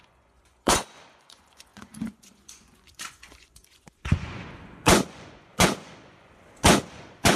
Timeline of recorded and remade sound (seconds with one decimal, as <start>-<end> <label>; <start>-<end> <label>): 0.0-7.4 remade